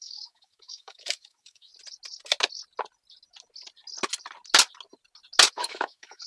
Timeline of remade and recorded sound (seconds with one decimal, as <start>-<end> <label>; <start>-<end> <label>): 0.0-1.7 remade; 1.7-5.5 recorded; 5.5-6.3 remade

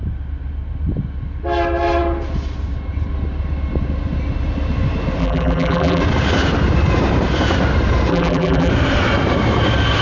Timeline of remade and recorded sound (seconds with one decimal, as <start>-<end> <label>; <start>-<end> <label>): 0.0-5.2 recorded; 5.2-6.0 remade; 6.0-8.1 recorded; 8.1-8.7 remade; 8.7-10.0 recorded

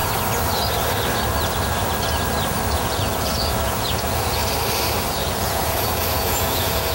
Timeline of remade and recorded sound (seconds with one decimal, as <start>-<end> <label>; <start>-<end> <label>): 0.0-2.7 recorded; 2.7-4.4 remade; 4.4-5.1 recorded; 5.1-6.9 remade

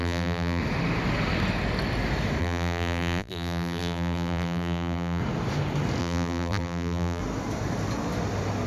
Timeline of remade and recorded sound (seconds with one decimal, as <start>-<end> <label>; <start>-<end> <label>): 0.0-0.6 remade; 0.6-2.4 recorded; 2.4-5.2 remade; 5.2-6.0 recorded; 6.0-7.2 remade; 7.2-8.7 recorded